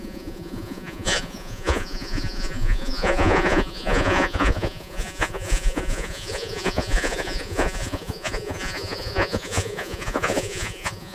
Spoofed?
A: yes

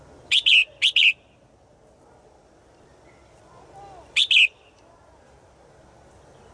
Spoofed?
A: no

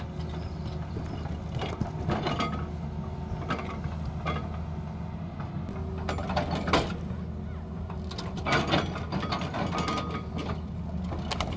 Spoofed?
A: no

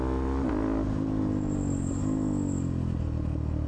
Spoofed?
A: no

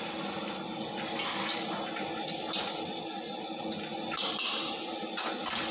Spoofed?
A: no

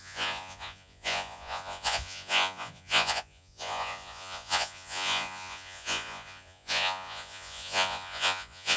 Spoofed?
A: yes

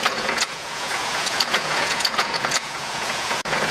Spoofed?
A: yes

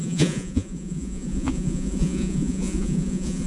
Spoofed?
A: yes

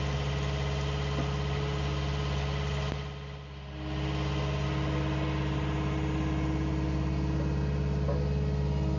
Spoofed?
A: no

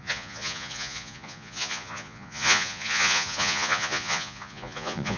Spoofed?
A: yes